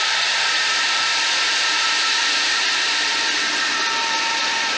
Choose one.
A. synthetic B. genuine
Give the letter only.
A